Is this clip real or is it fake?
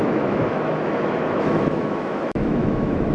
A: fake